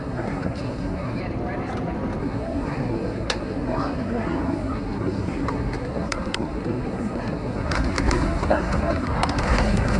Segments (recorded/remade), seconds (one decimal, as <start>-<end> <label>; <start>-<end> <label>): 0.0-1.2 remade; 1.2-2.2 recorded; 2.2-10.0 remade